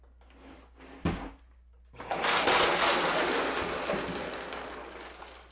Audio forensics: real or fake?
real